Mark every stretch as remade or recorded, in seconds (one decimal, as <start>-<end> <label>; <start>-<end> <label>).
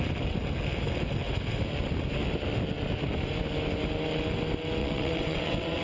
0.0-4.8 recorded; 4.8-5.8 remade